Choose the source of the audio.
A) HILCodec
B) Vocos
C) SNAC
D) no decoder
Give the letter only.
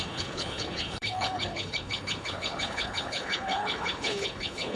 A